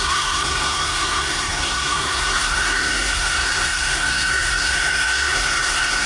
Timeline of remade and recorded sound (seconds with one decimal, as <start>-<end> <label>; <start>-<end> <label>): 0.0-6.1 remade